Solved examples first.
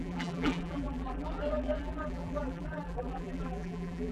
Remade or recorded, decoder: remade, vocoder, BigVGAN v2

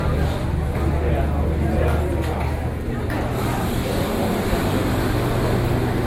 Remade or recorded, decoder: recorded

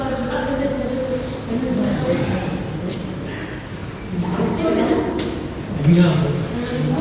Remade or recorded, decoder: recorded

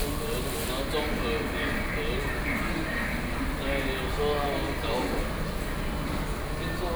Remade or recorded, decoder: recorded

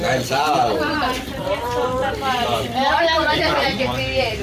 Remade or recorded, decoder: remade, vocoder, BigVGAN v2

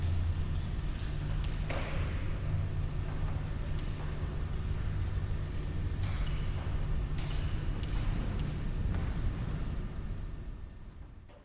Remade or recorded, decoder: recorded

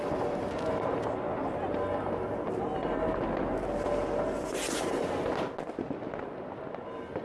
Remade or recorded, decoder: recorded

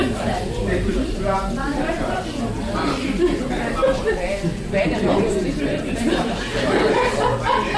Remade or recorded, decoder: remade, vocoder, BigVGAN v2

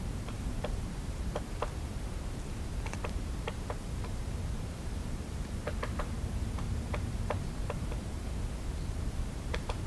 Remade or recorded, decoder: remade, vocoder, BigVGAN v2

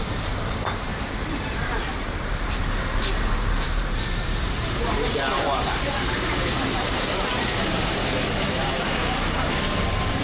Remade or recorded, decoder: remade, vocoder, BigVGAN v2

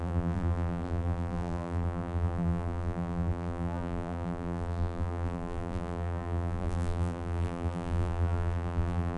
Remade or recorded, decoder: remade, vocoder, BigVGAN v2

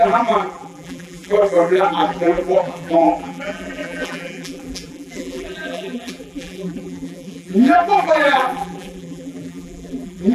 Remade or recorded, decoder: remade, vocoder, BigVGAN v2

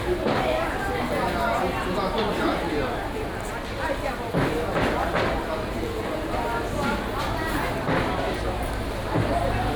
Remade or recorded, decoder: recorded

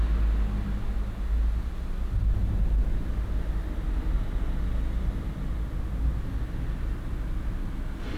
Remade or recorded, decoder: recorded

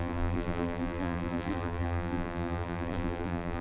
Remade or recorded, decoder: remade, vocoder, BigVGAN v2